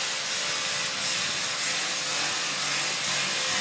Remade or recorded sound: recorded